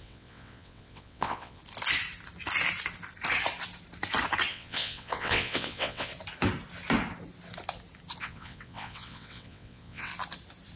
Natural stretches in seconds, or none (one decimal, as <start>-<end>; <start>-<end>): 1.6-4.5; 6.1-8.2; 10.1-10.8